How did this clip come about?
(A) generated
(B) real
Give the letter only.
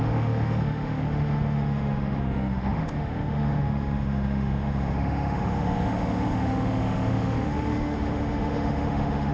A